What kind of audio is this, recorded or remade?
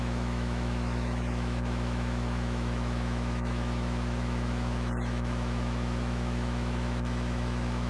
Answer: remade